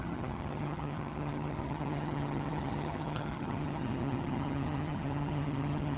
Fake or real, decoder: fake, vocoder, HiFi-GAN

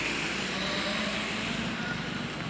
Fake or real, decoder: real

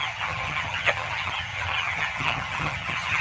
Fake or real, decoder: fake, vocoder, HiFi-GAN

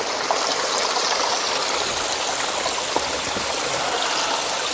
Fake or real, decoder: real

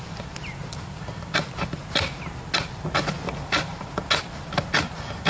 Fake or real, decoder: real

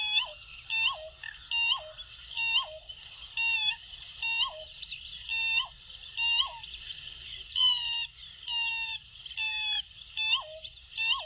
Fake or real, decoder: real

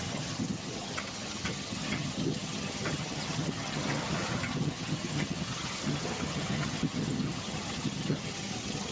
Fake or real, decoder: fake, vocoder, HiFi-GAN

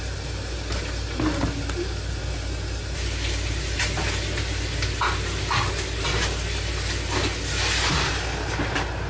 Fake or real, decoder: real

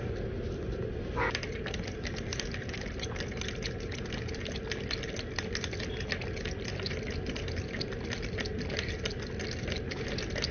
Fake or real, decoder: real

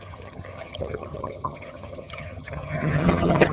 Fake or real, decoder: fake, vocoder, HiFi-GAN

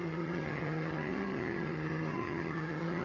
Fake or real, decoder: fake, vocoder, HiFi-GAN